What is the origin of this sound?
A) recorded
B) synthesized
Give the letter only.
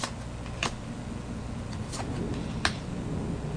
A